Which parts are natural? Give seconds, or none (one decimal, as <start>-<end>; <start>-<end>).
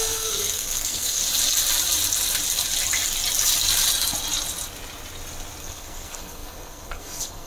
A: 1.2-5.6